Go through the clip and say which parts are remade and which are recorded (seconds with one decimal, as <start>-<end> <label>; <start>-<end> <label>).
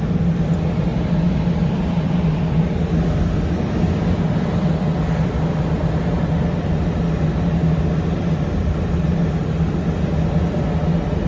0.0-11.3 recorded